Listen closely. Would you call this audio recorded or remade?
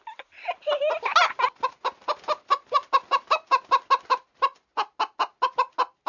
recorded